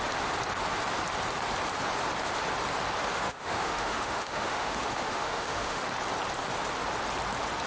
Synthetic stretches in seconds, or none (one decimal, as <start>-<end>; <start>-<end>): 3.1-5.8